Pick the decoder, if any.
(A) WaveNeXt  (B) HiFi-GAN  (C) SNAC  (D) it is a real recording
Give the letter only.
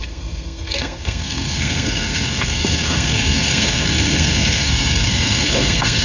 C